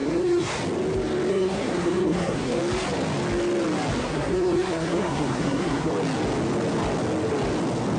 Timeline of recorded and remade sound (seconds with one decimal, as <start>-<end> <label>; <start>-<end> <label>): 0.0-0.6 remade; 0.6-1.3 recorded; 1.3-2.6 remade; 2.6-4.0 recorded; 4.0-5.9 remade; 5.9-8.0 recorded